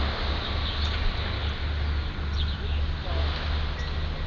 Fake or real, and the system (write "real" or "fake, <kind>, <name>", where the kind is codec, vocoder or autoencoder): real